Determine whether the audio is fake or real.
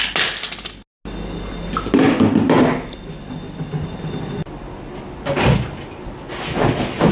real